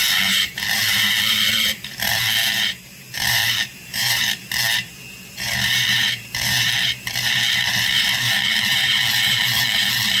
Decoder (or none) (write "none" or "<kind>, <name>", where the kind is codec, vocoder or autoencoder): vocoder, BigVGAN v2